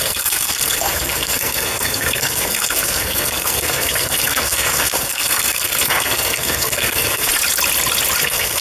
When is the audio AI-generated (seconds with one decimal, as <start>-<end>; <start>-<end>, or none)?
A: 0.0-7.3; 8.2-8.6